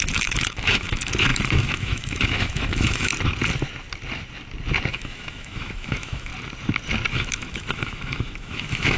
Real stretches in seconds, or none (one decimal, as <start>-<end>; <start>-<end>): 3.1-4.9; 6.3-7.1